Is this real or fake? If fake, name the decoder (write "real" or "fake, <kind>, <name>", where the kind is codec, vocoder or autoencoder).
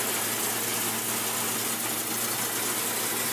real